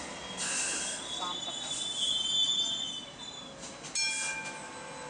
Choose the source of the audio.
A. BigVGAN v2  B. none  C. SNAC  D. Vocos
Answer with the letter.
B